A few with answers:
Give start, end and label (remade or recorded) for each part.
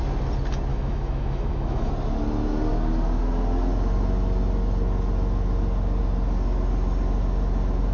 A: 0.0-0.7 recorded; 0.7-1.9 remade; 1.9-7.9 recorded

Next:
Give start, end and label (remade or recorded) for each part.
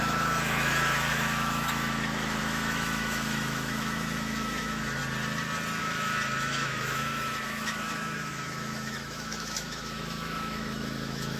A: 0.0-5.0 remade; 5.0-5.8 recorded; 5.8-11.4 remade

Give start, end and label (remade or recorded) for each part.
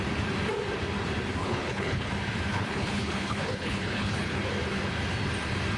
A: 0.0-1.4 recorded; 1.4-2.1 remade; 2.1-2.5 recorded; 2.5-4.4 remade; 4.4-5.8 recorded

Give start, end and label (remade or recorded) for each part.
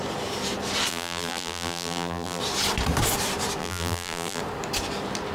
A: 0.0-0.9 recorded; 0.9-2.4 remade; 2.4-3.6 recorded; 3.6-4.4 remade; 4.4-5.3 recorded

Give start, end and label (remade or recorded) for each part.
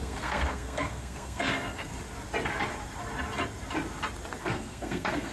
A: 0.0-1.9 remade; 1.9-4.4 recorded; 4.4-5.3 remade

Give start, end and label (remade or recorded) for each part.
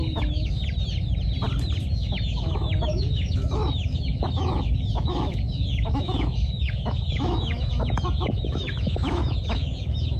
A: 0.0-0.6 remade; 0.6-1.9 recorded; 1.9-10.2 remade